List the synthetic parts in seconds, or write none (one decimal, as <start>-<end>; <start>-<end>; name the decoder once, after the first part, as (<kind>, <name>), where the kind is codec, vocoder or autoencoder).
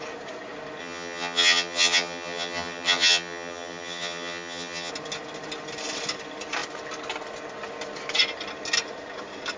0.8-4.9 (vocoder, HiFi-GAN)